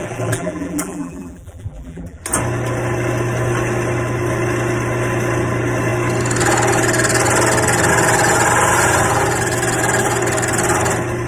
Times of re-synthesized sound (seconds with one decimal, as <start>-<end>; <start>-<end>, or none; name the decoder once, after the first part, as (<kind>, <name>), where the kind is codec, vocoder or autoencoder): 0.0-2.2 (vocoder, BigVGAN v2)